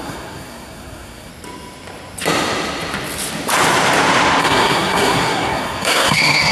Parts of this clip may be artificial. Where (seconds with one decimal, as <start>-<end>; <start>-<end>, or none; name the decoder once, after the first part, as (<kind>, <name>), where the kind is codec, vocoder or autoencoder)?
0.0-1.3 (codec, SNAC); 4.4-6.5